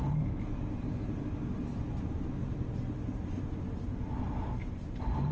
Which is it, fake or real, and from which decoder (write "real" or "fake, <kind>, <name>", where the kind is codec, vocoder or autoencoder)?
real